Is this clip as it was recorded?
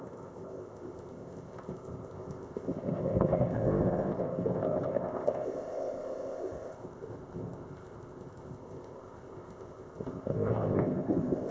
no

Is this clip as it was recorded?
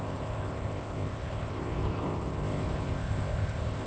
no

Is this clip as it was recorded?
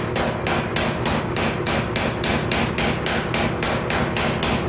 yes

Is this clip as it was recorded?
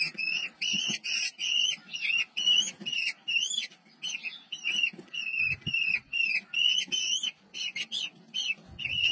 yes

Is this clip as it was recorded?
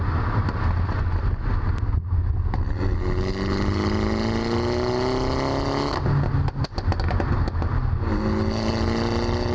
yes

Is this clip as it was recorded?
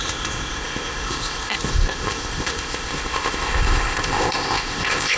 no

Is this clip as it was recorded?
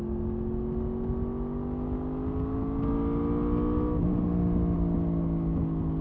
yes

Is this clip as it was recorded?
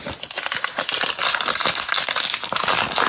yes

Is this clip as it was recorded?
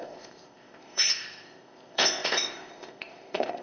no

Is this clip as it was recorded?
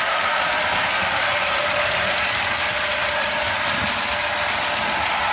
yes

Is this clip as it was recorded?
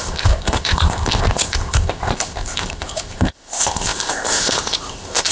no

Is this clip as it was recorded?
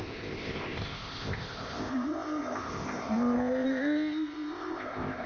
no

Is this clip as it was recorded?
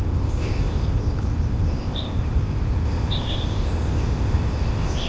no